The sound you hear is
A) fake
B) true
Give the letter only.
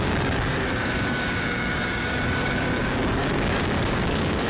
A